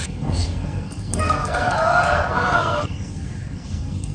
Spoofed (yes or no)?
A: yes